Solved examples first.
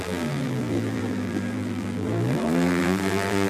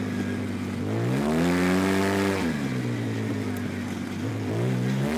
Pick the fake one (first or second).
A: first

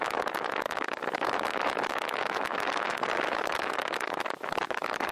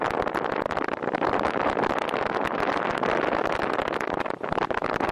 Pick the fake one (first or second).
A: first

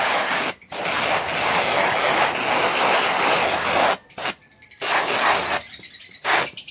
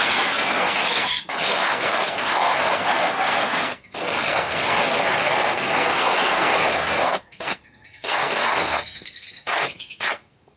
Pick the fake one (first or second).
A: second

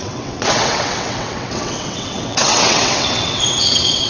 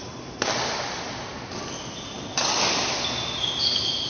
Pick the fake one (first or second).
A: first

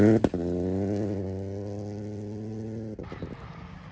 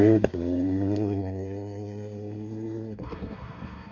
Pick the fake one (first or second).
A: second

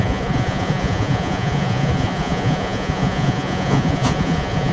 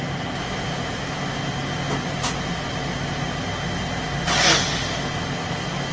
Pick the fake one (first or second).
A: first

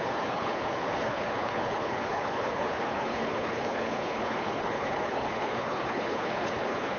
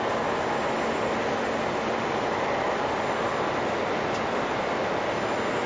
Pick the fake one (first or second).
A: first